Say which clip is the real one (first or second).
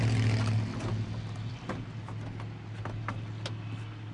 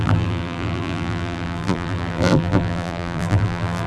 first